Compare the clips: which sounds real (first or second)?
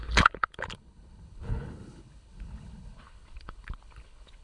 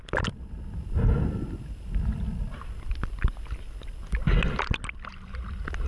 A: second